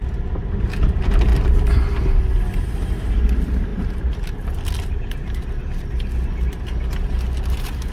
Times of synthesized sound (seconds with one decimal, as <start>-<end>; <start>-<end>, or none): none